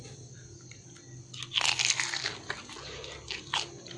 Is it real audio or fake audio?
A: real